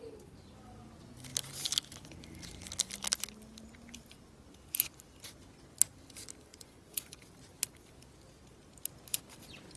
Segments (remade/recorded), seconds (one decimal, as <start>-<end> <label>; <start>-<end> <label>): 0.0-6.5 recorded; 6.5-7.2 remade; 7.2-9.8 recorded